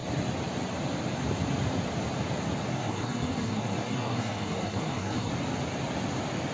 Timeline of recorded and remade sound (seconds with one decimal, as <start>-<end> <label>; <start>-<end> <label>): 0.0-2.7 recorded; 2.7-5.3 remade; 5.3-6.5 recorded